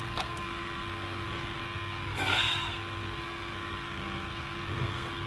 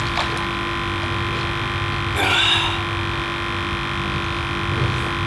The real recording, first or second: second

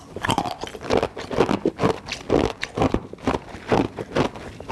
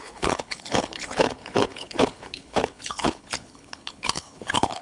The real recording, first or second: first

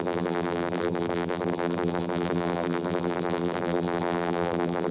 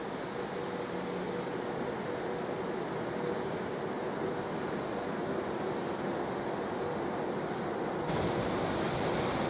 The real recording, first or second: second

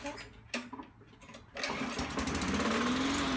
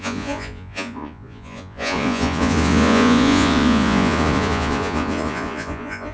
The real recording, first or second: first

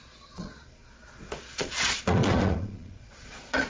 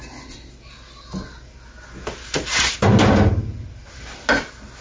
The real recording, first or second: second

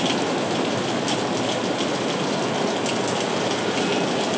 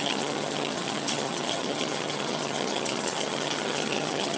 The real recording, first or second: first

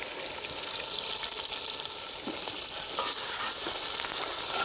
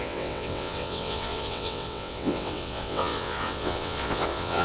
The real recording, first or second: first